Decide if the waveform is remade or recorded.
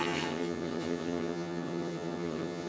remade